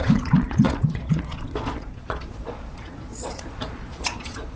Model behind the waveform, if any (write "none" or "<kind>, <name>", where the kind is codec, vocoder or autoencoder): vocoder, Vocos